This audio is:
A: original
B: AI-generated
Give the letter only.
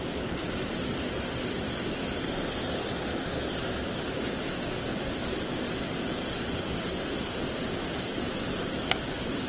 A